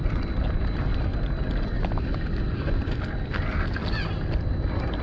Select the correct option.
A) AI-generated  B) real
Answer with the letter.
B